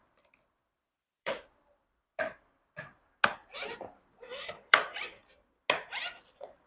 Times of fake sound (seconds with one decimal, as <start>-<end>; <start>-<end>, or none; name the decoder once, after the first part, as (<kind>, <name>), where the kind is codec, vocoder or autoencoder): 0.0-2.0 (vocoder, BigVGAN v2); 3.5-4.8